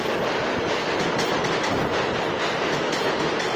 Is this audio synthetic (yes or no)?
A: no